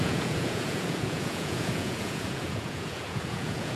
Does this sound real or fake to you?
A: fake